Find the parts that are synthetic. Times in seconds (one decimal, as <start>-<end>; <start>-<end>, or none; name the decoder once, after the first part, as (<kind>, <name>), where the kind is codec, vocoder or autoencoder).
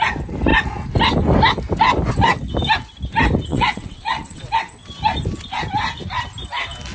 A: 3.5-4.9 (vocoder, WaveNeXt)